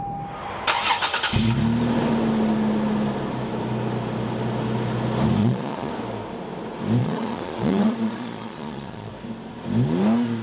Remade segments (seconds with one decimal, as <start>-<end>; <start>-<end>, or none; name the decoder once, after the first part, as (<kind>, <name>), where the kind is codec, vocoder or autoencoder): 5.4-5.9 (vocoder, Vocos); 7.0-9.1